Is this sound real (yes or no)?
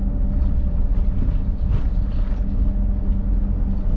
yes